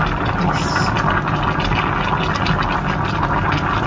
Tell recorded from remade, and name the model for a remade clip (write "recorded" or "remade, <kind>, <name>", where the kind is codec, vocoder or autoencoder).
recorded